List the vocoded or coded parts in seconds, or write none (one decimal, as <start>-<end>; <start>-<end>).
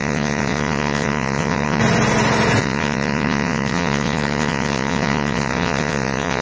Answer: 0.0-1.8; 2.6-6.4